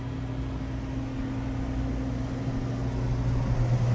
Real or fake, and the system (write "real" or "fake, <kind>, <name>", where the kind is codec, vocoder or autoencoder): real